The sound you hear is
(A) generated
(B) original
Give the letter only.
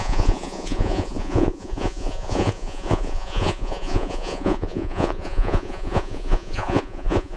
A